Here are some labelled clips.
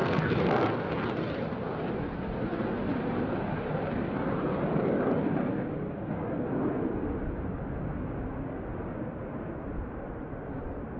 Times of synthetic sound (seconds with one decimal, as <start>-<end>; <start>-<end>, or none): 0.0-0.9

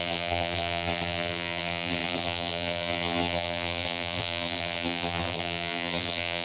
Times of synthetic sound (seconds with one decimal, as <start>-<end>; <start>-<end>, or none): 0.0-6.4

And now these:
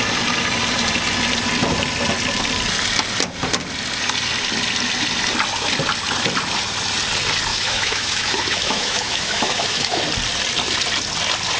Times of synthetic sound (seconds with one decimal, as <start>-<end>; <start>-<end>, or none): 7.5-10.0

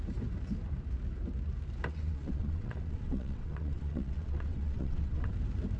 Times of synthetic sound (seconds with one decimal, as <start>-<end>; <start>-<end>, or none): 1.9-5.3

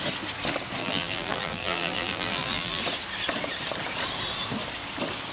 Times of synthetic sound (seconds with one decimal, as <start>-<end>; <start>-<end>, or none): 0.8-2.8

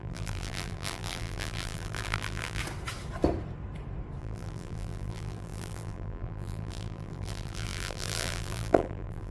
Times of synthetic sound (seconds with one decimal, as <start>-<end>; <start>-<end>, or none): 0.0-2.6; 4.2-9.3